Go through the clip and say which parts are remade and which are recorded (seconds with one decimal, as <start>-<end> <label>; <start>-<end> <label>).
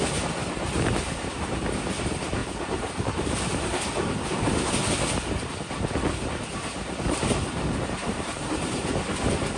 0.0-0.4 recorded; 0.4-1.5 remade; 1.5-2.4 recorded; 2.4-3.5 remade; 3.5-8.0 recorded; 8.0-8.6 remade; 8.6-9.6 recorded